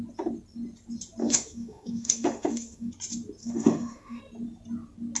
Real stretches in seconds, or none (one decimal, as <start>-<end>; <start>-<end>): 0.0-1.2; 2.9-3.4; 4.2-5.2

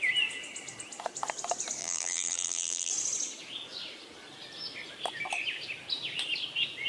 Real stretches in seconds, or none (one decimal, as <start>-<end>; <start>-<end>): 0.0-1.8; 2.9-6.9